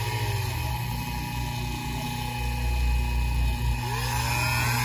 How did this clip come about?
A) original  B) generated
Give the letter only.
A